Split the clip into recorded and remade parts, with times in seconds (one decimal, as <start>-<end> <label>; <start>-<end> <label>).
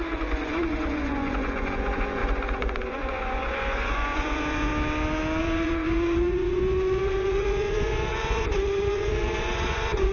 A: 0.0-4.7 remade; 4.7-5.4 recorded; 5.4-10.1 remade